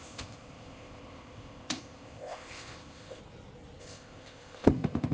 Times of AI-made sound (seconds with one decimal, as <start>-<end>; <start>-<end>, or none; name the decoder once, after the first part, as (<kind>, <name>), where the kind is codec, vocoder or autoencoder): 0.0-3.2 (codec, ZipCodec); 3.8-5.1